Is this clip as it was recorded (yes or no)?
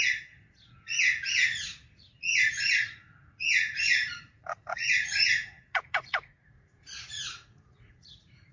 no